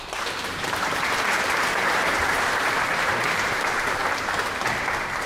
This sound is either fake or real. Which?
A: fake